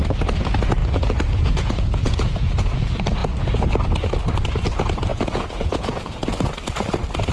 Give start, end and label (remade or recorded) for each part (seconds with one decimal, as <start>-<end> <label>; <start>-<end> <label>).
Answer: 0.0-0.8 recorded; 0.8-2.7 remade; 2.7-5.1 recorded; 5.1-6.4 remade; 6.4-7.3 recorded